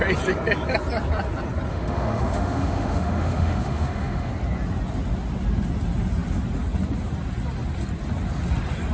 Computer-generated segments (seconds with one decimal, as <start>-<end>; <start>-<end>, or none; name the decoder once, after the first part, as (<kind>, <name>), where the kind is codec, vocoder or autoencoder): 1.7-4.3 (autoencoder, DAC-VAE)